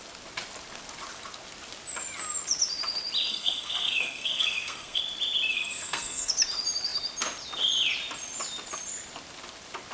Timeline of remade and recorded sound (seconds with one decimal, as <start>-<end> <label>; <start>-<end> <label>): 0.0-3.3 recorded; 3.3-5.0 remade; 5.0-5.5 recorded; 5.5-6.3 remade; 6.3-9.9 recorded